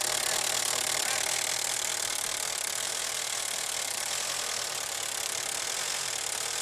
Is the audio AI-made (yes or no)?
no